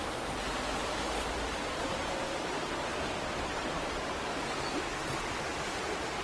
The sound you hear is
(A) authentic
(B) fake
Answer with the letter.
A